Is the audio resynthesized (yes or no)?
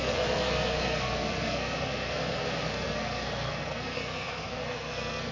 yes